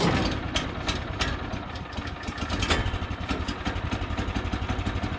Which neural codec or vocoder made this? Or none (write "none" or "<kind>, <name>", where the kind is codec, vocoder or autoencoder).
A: none